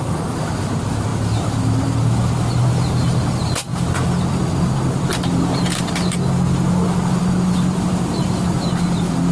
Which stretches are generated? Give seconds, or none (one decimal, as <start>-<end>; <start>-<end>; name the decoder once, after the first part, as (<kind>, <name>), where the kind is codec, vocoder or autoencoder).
none